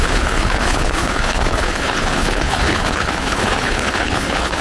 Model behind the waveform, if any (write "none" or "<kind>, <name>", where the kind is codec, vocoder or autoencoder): codec, HILCodec